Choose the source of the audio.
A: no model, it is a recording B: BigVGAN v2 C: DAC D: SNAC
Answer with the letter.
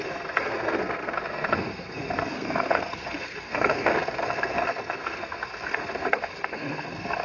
D